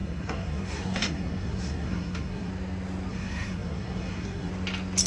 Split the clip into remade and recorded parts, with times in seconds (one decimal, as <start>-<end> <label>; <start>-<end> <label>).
0.0-2.5 remade; 2.5-3.1 recorded; 3.1-4.5 remade; 4.5-5.1 recorded